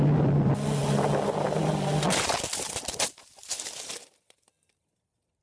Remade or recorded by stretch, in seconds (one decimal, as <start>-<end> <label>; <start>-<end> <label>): 0.0-5.4 recorded